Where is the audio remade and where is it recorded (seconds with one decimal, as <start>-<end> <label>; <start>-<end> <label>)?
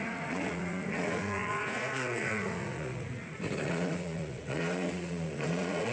0.0-5.9 remade